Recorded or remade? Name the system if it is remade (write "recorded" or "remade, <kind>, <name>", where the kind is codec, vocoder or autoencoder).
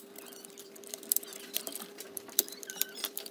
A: remade, vocoder, BigVGAN v2